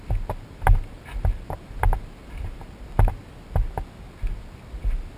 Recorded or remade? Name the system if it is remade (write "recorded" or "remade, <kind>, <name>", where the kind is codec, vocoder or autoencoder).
recorded